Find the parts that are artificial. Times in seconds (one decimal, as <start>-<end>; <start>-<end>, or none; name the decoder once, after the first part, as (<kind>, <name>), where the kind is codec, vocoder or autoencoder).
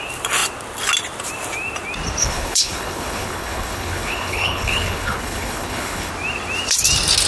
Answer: 2.2-6.1 (codec, HILCodec)